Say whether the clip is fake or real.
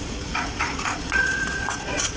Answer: fake